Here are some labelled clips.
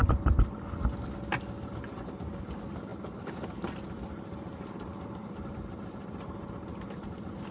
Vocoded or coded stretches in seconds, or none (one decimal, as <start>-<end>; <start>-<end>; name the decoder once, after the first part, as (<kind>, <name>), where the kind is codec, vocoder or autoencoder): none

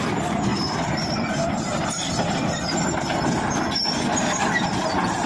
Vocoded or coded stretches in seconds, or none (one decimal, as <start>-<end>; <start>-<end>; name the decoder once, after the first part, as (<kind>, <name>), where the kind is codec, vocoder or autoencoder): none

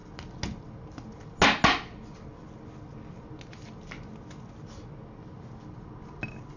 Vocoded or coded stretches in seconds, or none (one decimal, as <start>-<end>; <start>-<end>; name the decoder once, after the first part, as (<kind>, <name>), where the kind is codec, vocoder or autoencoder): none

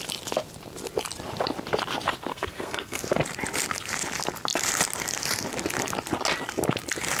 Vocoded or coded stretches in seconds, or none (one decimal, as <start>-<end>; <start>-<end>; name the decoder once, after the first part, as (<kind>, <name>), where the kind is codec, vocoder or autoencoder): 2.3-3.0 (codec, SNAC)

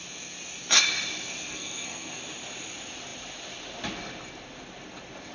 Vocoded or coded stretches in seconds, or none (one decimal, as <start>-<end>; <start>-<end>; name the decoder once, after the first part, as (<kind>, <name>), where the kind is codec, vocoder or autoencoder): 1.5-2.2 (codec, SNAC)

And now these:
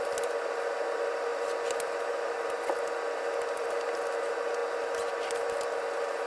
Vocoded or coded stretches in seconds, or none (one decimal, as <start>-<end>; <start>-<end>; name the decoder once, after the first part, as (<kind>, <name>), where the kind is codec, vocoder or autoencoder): none

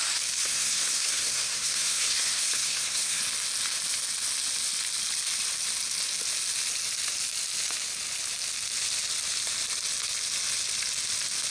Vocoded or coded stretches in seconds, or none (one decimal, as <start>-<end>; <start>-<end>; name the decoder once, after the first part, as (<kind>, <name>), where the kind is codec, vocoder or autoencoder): 0.4-3.2 (codec, SNAC)